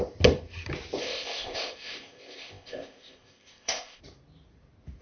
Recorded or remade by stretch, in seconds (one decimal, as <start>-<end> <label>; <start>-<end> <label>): 0.0-1.0 recorded; 1.0-4.0 remade; 4.0-5.0 recorded

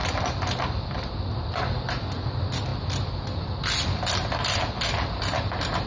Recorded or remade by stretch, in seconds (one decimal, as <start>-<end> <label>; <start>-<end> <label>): 0.0-5.9 recorded

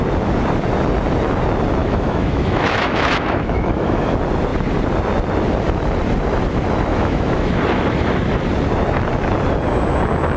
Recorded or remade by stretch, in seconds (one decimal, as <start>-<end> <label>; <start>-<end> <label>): 0.0-1.8 recorded; 1.8-4.1 remade; 4.1-6.9 recorded; 6.9-7.5 remade; 7.5-10.4 recorded

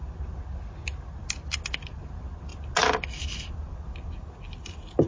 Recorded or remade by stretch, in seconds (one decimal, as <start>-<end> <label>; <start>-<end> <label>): 0.0-5.1 recorded

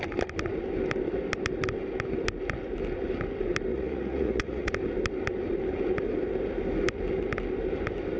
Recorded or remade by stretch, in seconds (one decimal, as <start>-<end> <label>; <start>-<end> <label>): 0.0-3.7 recorded; 3.7-4.7 remade; 4.7-8.2 recorded

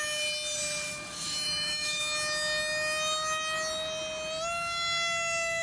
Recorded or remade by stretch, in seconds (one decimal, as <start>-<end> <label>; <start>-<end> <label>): 0.0-0.9 recorded; 0.9-2.0 remade; 2.0-5.6 recorded

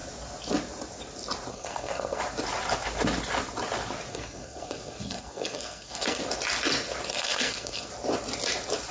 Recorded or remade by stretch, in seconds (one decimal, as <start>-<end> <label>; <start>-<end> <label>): 0.0-1.5 recorded; 1.5-2.2 remade; 2.2-4.1 recorded; 4.1-6.2 remade; 6.2-7.1 recorded; 7.1-7.9 remade; 7.9-8.9 recorded